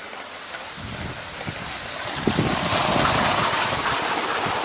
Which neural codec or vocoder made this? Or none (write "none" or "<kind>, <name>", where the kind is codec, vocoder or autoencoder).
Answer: none